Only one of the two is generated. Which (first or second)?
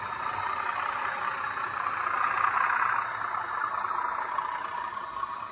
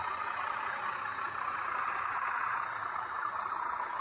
second